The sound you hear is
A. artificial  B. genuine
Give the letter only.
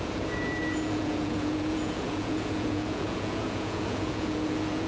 A